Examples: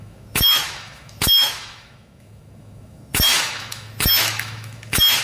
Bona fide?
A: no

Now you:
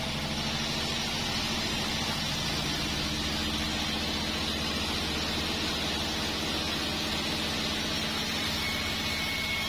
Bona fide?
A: yes